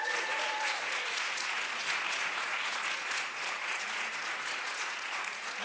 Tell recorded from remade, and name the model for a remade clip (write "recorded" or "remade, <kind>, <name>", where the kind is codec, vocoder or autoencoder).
remade, vocoder, Vocos